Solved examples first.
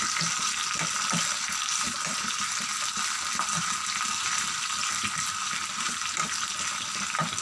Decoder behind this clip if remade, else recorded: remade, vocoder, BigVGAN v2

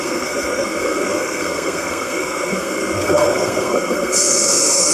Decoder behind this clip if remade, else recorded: remade, codec, SNAC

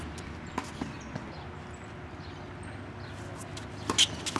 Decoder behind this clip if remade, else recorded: recorded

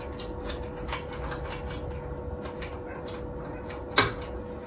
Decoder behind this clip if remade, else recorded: recorded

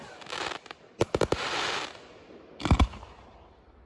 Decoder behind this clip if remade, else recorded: recorded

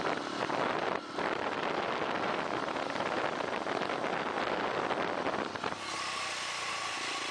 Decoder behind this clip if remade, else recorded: recorded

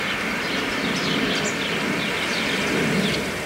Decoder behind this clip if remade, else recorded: recorded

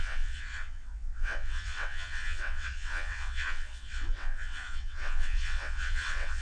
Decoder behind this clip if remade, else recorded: remade, vocoder, WaveNeXt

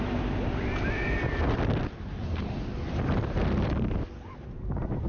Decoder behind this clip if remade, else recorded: recorded